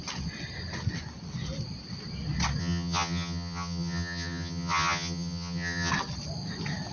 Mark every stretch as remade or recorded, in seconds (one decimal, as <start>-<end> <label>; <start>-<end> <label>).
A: 0.0-2.6 recorded; 2.6-5.9 remade; 5.9-6.9 recorded